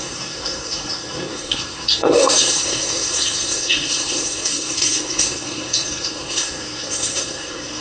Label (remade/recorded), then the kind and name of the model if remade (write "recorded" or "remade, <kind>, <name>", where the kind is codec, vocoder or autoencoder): remade, codec, SNAC